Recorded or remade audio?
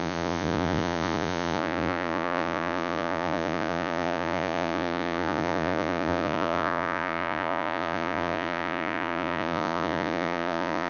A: remade